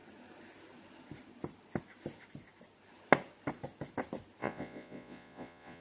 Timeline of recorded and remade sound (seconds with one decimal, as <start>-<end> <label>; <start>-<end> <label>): 0.0-4.4 recorded; 4.4-5.8 remade